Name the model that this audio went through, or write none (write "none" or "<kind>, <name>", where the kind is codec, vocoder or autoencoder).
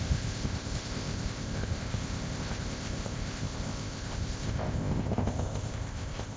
codec, ZipCodec